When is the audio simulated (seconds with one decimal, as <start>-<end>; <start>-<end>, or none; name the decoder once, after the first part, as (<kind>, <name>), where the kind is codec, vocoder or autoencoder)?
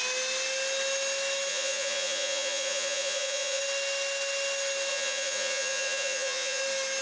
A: 1.5-3.6 (vocoder, Vocos); 4.9-6.6